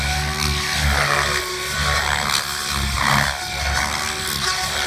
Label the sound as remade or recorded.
recorded